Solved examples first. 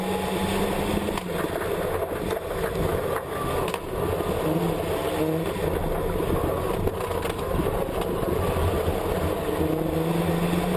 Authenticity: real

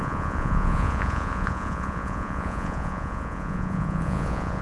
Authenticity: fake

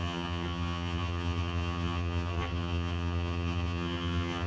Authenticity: fake